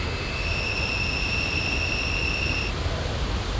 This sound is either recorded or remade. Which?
recorded